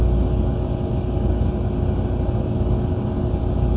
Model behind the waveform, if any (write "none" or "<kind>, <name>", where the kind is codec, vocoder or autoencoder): none